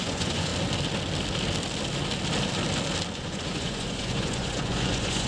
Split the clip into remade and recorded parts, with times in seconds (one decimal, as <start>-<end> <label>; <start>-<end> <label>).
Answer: 0.0-0.5 remade; 0.5-3.2 recorded; 3.2-5.3 remade